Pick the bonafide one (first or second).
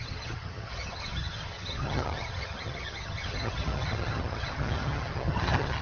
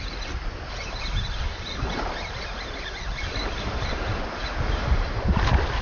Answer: second